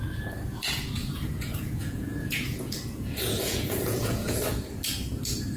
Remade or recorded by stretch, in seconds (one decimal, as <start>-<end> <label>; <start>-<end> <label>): 0.0-1.0 recorded; 1.0-4.4 remade; 4.4-5.6 recorded

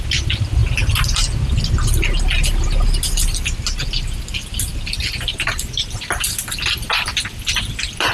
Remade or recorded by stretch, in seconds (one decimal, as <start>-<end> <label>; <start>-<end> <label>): 0.0-8.1 recorded

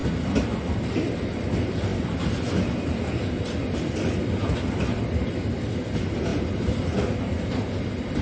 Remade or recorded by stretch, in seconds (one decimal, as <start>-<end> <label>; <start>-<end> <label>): 0.0-8.2 recorded

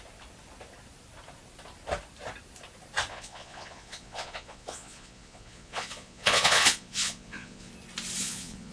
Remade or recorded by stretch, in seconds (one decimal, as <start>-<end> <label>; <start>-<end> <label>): 0.0-3.1 recorded; 3.1-7.7 remade; 7.7-8.2 recorded; 8.2-8.7 remade

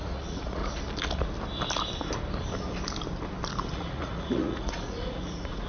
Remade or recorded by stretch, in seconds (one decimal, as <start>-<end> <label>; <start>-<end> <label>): 0.0-0.6 remade; 0.6-3.6 recorded; 3.6-5.7 remade